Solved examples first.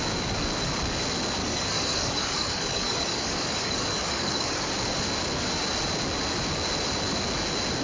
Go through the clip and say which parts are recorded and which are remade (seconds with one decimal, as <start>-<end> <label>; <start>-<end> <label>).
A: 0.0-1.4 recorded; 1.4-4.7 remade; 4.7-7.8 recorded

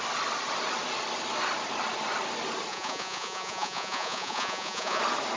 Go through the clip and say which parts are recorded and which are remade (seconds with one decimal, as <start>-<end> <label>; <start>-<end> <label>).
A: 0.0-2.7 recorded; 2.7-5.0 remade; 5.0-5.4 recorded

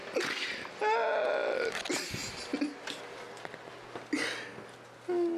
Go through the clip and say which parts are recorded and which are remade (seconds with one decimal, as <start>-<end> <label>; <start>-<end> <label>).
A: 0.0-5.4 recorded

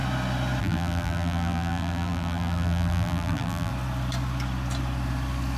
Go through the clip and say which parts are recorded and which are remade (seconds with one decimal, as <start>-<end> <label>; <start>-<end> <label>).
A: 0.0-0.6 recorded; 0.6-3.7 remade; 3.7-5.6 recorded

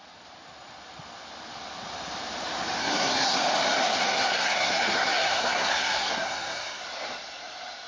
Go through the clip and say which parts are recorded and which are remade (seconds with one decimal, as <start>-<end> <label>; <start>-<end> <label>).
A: 0.0-2.8 recorded; 2.8-3.4 remade; 3.4-3.8 recorded; 3.8-6.8 remade; 6.8-7.9 recorded